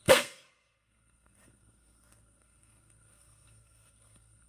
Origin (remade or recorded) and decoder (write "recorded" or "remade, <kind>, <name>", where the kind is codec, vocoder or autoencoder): remade, codec, SNAC